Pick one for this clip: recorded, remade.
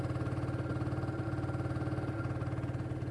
recorded